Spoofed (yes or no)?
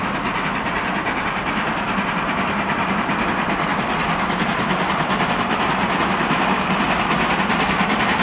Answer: no